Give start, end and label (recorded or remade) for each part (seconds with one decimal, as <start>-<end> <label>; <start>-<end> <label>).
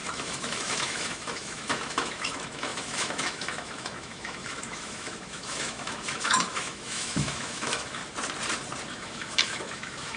0.0-8.0 remade; 8.0-8.9 recorded; 8.9-10.2 remade